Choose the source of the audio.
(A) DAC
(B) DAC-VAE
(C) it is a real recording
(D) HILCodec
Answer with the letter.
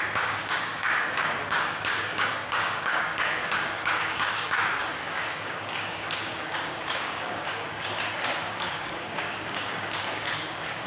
A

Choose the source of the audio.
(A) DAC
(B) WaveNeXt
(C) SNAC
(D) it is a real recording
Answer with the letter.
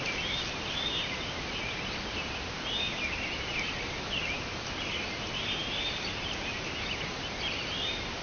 D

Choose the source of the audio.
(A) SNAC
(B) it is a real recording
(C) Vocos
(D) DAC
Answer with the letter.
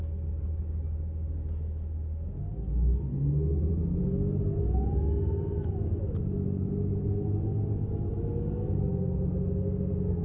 B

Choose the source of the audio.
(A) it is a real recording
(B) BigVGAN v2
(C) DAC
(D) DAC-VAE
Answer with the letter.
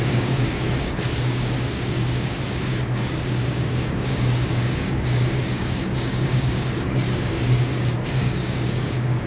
C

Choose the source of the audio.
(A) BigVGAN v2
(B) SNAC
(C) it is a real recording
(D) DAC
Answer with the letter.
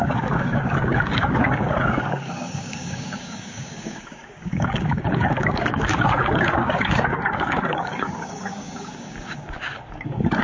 D